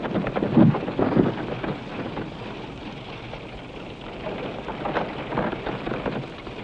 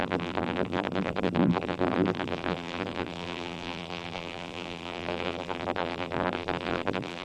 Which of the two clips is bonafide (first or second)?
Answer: first